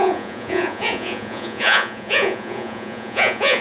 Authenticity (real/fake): fake